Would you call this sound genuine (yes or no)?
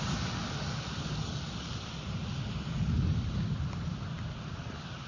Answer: yes